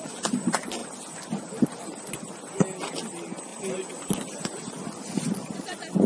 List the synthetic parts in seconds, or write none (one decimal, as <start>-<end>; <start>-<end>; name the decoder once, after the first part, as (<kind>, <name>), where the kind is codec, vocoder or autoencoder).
none